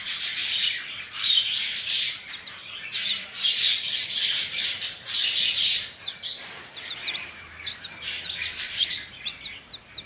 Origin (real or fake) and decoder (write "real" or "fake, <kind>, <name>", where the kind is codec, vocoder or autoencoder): fake, vocoder, BigVGAN v2